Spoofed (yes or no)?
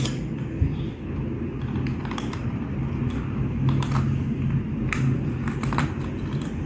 no